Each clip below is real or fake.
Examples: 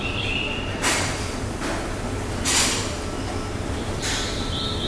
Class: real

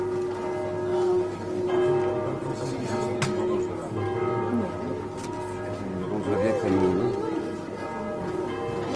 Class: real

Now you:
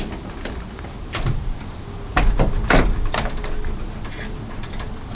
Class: real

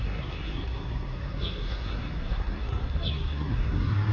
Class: fake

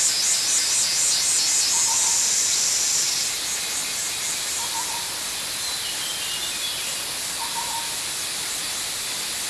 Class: real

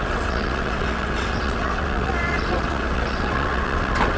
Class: fake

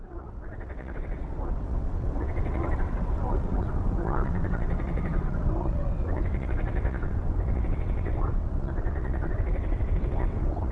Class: fake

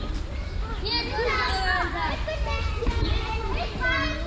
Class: real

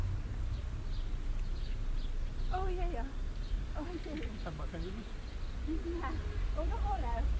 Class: real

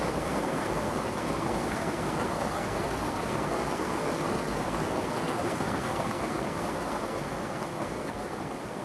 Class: fake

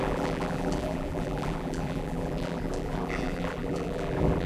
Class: fake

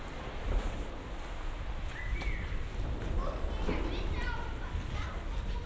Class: real